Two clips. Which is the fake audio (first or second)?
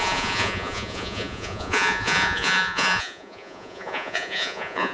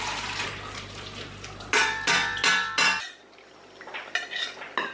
first